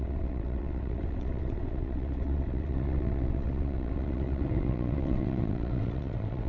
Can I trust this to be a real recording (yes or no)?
no